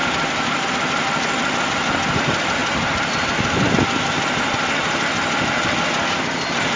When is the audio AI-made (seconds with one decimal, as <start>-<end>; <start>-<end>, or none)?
0.0-0.7